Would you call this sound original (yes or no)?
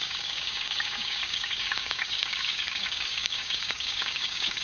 no